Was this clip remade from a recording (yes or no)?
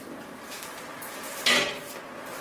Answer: no